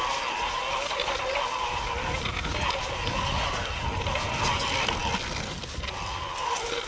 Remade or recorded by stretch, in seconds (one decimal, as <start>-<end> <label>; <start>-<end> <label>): 0.0-6.9 recorded